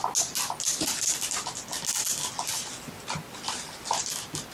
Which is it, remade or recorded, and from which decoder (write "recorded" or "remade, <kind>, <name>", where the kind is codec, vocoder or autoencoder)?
recorded